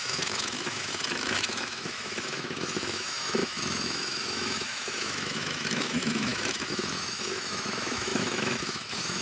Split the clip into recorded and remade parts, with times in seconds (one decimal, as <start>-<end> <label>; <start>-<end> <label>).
0.0-9.2 remade